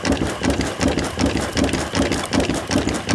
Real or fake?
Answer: fake